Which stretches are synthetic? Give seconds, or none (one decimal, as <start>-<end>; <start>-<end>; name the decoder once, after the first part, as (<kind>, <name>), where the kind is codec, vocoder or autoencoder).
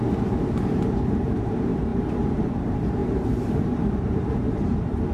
0.0-5.1 (vocoder, BigVGAN v2)